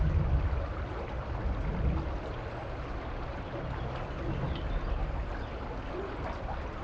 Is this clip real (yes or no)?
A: yes